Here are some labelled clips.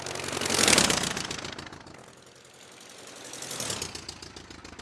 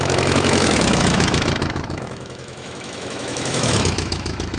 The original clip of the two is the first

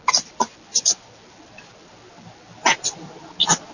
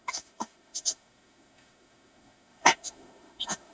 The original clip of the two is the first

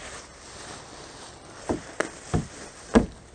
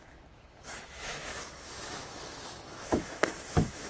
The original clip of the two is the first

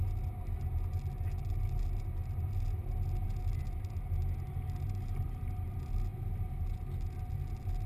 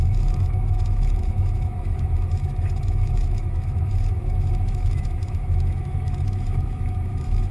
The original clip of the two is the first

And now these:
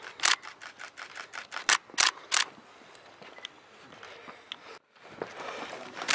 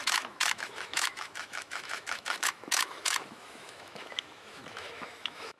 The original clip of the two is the first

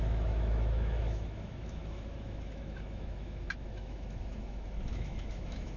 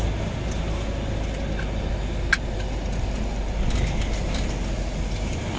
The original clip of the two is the second